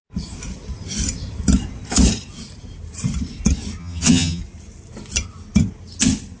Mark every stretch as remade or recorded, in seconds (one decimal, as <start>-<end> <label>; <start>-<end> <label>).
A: 0.0-3.8 recorded; 3.8-4.4 remade; 4.4-6.4 recorded